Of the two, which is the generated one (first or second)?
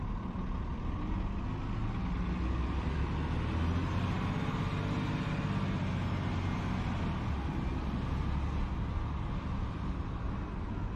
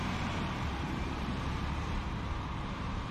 second